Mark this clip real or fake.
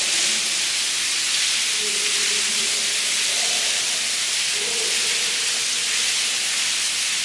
real